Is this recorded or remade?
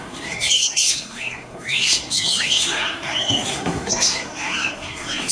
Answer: remade